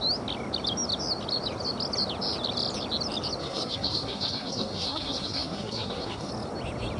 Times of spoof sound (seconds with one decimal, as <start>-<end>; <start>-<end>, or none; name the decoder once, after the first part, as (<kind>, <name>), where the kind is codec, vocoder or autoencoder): 3.4-6.3 (codec, SNAC)